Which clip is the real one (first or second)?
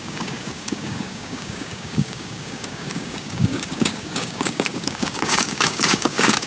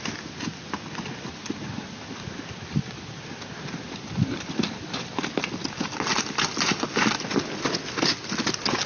second